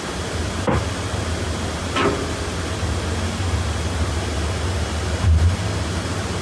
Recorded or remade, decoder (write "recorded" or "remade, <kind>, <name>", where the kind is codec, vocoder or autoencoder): recorded